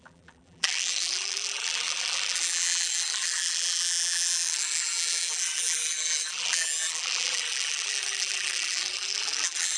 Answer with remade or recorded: remade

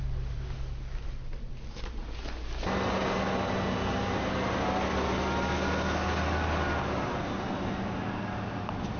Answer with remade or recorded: recorded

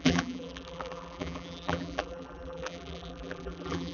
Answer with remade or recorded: remade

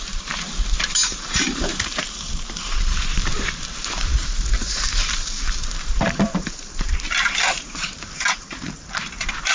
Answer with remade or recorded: remade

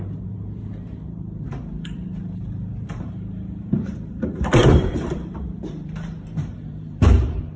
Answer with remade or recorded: remade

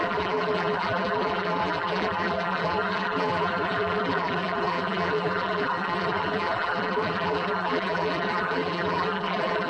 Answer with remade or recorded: remade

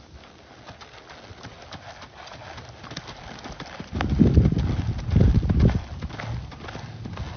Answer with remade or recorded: recorded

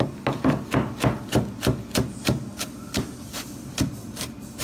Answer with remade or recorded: recorded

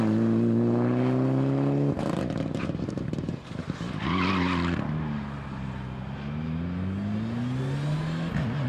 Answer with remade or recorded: recorded